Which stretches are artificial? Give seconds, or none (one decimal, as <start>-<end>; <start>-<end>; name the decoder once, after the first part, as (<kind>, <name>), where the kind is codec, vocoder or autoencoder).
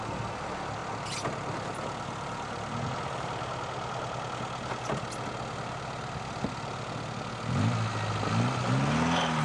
none